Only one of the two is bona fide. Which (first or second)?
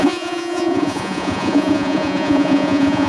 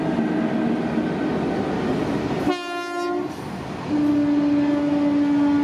second